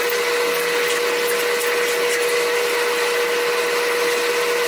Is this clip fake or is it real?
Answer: real